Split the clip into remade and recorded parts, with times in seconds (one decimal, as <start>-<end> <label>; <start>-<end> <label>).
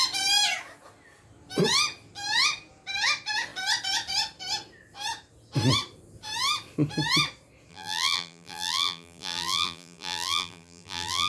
0.0-7.7 recorded; 7.7-11.3 remade